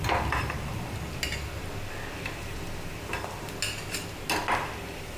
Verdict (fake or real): real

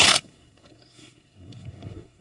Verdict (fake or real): fake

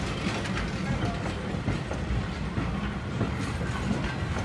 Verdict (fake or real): real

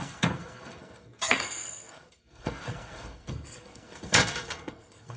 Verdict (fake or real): fake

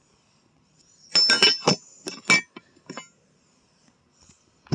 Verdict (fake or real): real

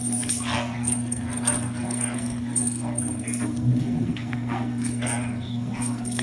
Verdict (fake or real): fake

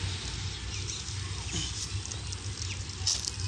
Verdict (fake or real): real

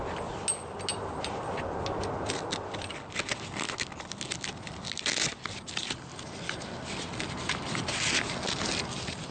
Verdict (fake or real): real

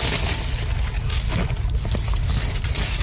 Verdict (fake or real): real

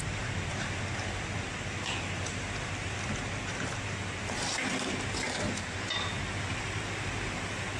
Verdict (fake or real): real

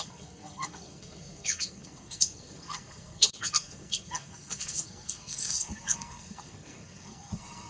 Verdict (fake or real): fake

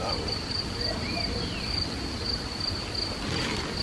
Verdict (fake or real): real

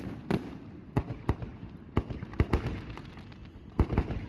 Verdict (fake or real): real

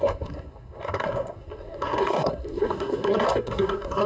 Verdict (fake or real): fake